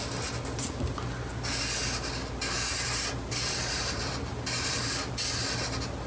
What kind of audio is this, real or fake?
real